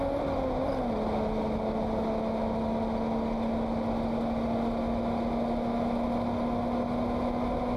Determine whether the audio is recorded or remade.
recorded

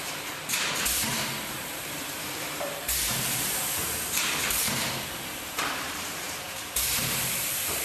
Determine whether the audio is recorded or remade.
remade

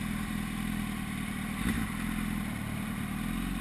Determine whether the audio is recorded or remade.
recorded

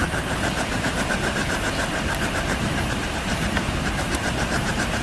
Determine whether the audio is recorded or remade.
remade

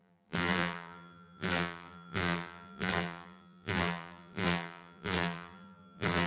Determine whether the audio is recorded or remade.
remade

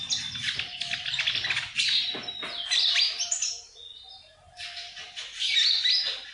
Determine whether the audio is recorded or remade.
recorded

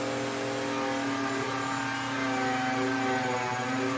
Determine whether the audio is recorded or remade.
recorded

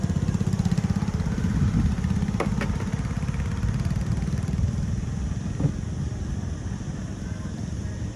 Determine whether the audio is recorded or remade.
recorded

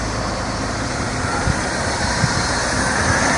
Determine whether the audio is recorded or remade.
remade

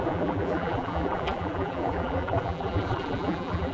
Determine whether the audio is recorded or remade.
remade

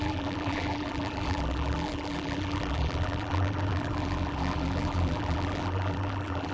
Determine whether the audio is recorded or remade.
remade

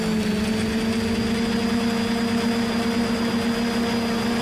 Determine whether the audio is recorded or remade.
recorded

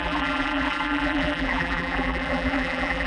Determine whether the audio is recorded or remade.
remade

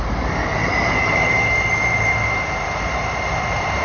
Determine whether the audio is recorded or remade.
remade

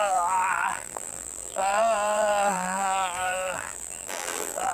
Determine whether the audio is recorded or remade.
remade